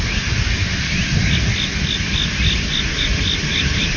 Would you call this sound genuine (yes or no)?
yes